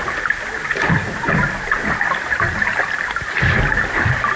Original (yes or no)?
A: yes